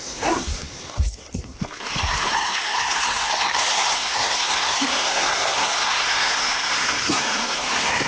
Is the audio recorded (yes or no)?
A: no